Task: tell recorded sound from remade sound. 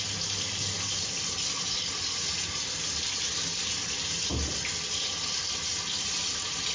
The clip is remade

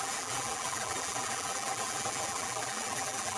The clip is remade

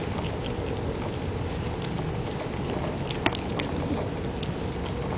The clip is recorded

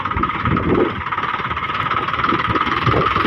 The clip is remade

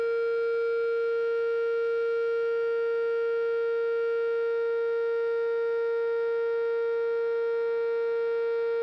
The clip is recorded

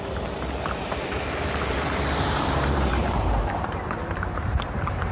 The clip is remade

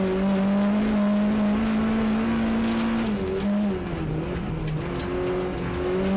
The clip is recorded